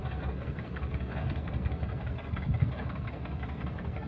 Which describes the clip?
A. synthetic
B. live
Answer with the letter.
A